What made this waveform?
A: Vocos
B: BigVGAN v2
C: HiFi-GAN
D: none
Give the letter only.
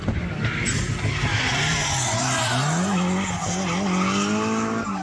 D